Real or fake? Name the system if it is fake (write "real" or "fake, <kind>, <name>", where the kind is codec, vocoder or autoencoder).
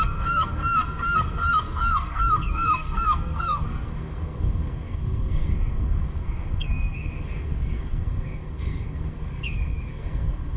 fake, codec, SNAC